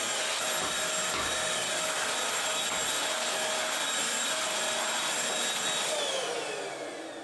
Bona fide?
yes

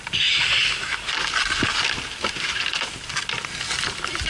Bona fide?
yes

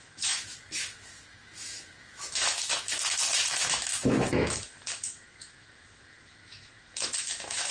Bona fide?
no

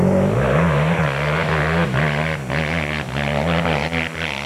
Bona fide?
yes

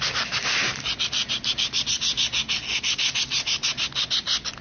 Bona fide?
yes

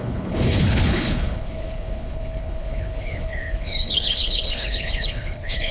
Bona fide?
no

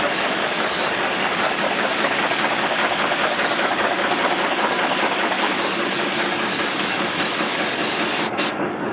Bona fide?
no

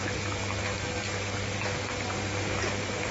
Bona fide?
yes